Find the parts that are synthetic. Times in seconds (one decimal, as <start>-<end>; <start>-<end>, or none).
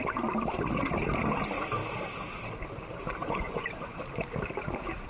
3.2-4.0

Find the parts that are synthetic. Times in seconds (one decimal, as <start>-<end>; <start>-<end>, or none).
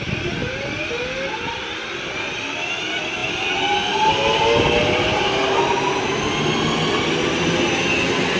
none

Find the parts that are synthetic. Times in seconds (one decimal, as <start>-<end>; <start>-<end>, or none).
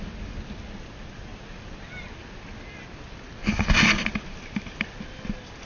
none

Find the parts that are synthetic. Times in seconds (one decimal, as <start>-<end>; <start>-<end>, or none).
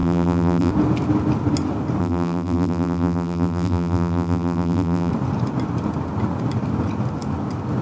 0.0-0.7; 2.0-5.1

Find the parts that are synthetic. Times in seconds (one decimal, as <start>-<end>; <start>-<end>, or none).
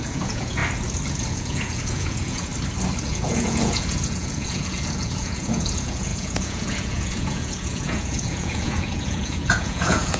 0.0-0.6; 1.3-2.5; 3.0-10.2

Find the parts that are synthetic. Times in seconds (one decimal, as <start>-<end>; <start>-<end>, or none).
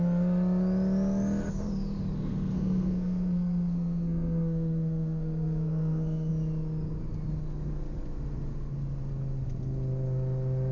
2.1-6.3